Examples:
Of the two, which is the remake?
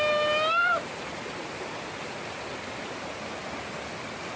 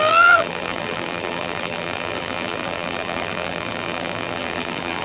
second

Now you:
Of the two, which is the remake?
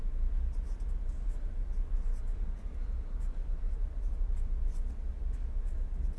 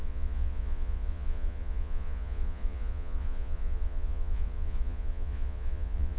second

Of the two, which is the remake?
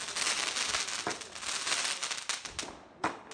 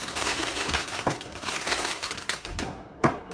second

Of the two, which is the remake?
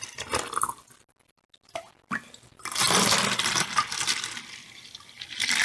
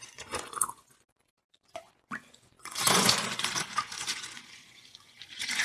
second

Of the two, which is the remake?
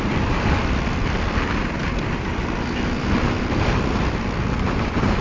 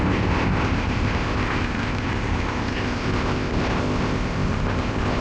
second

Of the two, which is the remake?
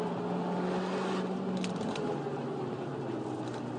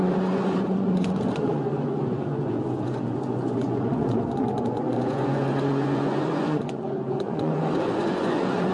second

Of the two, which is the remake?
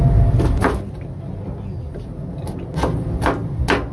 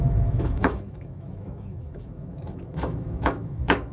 second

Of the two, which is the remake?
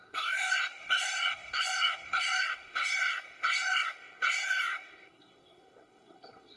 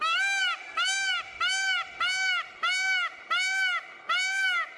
first